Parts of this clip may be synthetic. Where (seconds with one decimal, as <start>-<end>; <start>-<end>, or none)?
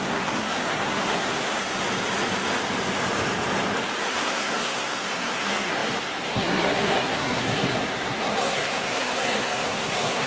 0.0-1.6; 4.0-10.3